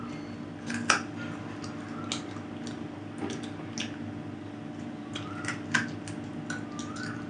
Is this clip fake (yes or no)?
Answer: no